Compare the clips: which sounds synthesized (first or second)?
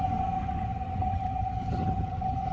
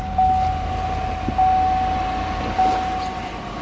first